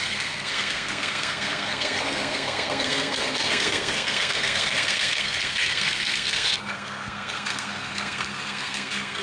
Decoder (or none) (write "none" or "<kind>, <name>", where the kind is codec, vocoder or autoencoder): codec, SNAC